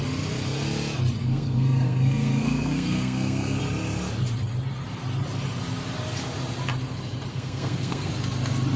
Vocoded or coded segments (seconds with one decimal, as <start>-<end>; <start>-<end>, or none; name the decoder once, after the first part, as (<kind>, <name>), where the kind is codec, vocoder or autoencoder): 1.2-3.6 (codec, SNAC); 7.3-8.1

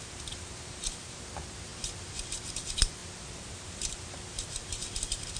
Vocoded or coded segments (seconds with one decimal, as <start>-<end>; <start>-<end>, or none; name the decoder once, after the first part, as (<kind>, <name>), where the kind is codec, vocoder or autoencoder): none

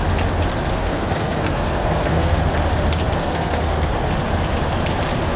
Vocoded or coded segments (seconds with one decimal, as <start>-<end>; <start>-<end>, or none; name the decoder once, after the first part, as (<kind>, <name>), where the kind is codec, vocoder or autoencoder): 0.7-2.4 (codec, SNAC); 3.2-3.9

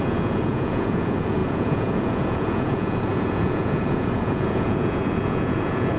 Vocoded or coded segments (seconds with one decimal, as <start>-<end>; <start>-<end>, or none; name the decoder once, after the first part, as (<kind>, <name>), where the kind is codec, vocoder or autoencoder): 0.0-6.0 (vocoder, Vocos)

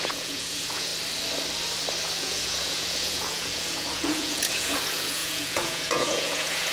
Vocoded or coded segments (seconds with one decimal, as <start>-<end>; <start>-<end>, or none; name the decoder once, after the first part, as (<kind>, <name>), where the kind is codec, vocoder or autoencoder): 0.0-0.9 (vocoder, Vocos); 2.2-6.7

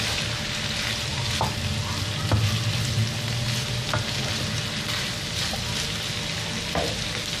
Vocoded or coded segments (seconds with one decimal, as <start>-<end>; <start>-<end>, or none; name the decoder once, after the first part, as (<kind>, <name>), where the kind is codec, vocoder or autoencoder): none